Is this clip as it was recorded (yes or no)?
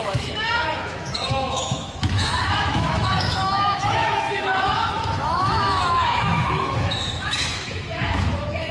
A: no